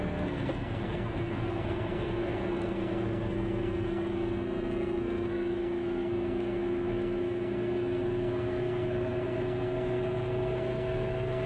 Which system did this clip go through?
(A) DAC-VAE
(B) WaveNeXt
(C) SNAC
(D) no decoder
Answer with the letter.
C